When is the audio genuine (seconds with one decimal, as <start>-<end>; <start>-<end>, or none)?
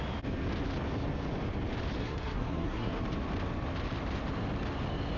0.0-2.0; 3.0-5.2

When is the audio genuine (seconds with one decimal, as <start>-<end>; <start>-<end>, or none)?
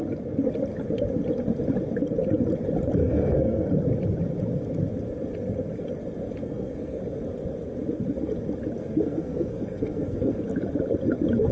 0.0-3.0; 3.7-6.4; 7.0-8.8; 10.4-11.5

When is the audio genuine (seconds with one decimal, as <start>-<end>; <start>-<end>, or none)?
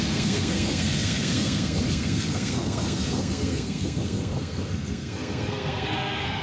none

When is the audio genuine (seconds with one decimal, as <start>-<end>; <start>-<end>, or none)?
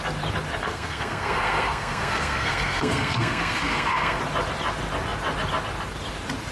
0.0-0.6; 4.2-6.5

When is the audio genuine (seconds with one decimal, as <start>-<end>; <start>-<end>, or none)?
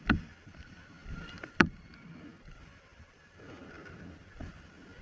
0.0-5.0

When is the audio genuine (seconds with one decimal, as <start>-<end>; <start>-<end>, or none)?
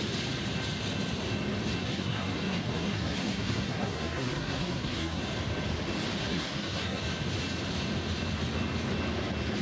0.0-1.8; 5.2-6.2; 7.0-9.6